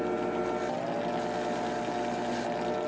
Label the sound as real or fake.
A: real